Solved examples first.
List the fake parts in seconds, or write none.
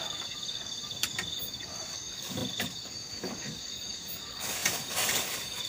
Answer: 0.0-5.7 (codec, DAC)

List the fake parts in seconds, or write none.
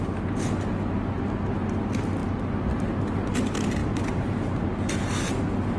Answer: none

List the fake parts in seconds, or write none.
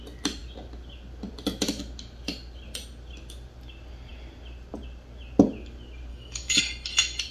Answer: 6.1-6.6 (codec, DAC)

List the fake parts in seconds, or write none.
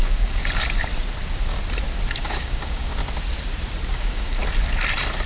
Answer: 0.0-0.4 (codec, DAC); 2.2-3.0; 3.9-4.4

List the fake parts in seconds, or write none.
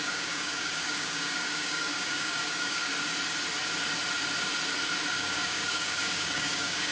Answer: 0.0-2.9 (codec, DAC); 5.1-6.9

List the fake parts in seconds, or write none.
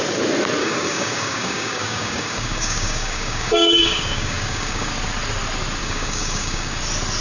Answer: 0.6-4.9 (codec, DAC); 5.8-6.8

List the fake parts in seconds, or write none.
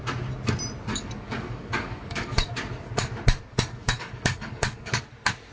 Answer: 0.9-2.5 (codec, DAC); 3.5-5.0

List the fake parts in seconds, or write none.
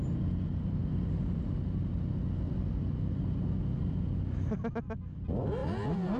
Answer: none